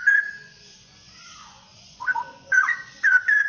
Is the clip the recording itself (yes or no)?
no